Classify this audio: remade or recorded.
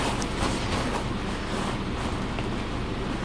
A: recorded